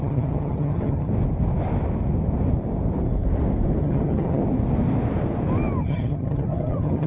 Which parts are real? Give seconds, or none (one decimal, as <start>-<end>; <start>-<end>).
1.1-3.8; 4.4-5.8